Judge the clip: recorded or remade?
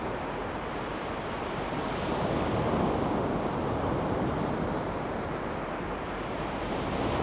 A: recorded